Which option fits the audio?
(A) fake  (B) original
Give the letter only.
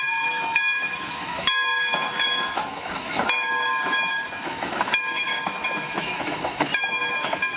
A